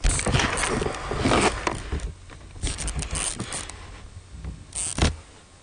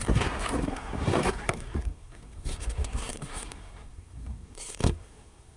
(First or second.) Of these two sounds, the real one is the first